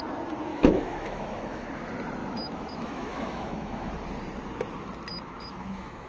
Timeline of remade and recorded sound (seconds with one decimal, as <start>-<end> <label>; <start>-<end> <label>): 0.0-0.5 recorded; 0.5-1.7 remade; 1.7-2.2 recorded; 2.2-3.9 remade; 3.9-5.1 recorded; 5.1-6.1 remade